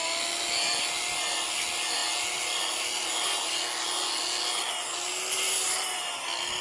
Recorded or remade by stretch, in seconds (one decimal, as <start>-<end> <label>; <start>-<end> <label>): 0.0-6.6 recorded